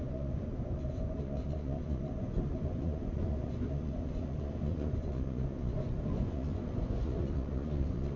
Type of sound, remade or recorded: remade